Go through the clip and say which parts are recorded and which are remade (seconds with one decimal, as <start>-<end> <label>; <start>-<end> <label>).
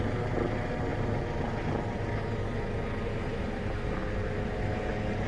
0.0-5.3 recorded